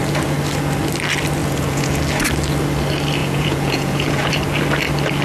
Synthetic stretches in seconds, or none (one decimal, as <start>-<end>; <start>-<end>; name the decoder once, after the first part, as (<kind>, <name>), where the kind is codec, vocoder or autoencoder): 1.4-2.0 (vocoder, Vocos); 3.2-4.3